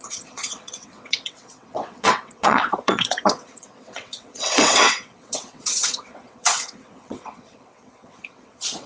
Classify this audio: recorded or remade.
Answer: remade